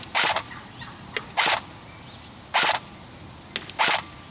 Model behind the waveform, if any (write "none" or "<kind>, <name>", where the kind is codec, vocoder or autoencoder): none